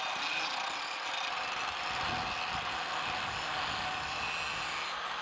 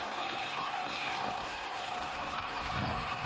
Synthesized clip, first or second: second